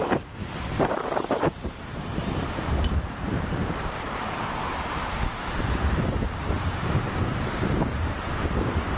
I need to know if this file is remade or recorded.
remade